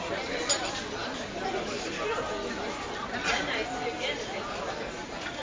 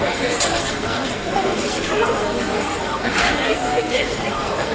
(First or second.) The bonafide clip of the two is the first